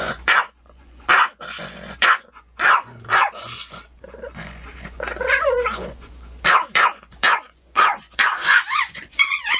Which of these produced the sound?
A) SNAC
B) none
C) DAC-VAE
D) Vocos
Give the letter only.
D